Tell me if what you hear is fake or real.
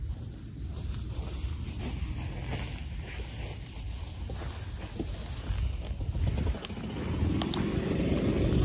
real